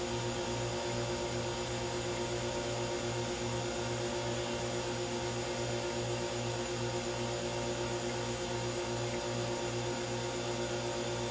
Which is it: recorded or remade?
recorded